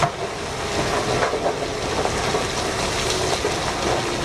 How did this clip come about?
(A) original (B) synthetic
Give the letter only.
A